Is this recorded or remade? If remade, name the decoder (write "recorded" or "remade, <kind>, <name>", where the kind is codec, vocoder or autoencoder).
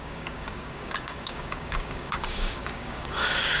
remade, codec, DAC